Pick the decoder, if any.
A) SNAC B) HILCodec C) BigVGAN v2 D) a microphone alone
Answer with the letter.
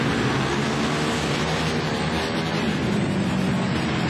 D